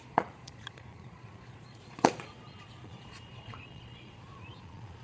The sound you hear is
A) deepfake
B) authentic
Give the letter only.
A